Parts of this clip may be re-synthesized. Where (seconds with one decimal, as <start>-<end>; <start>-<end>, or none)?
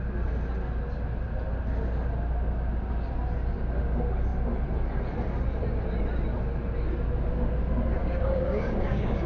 8.0-9.3